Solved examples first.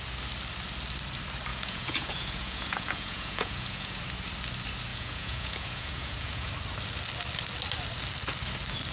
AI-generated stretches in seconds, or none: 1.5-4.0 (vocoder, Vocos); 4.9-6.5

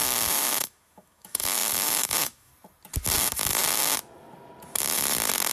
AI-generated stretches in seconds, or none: 0.0-2.5 (autoencoder, DAC-VAE)

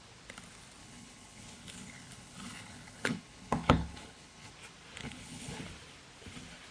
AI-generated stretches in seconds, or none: 0.8-4.5 (codec, HILCodec); 5.0-5.6

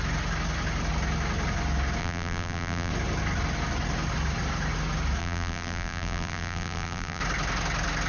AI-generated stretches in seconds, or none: 2.0-2.9 (vocoder, BigVGAN v2); 5.2-7.2

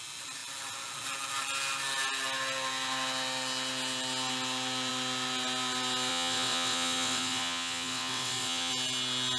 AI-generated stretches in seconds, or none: 6.1-8.7 (vocoder, WaveNeXt)

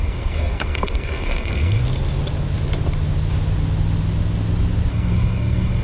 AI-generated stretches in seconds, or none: 0.0-1.8 (codec, SNAC); 4.9-5.8

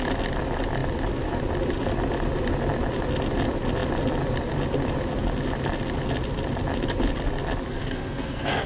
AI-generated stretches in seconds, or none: 7.7-8.7 (codec, SNAC)

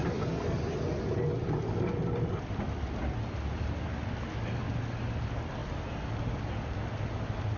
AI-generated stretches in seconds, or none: none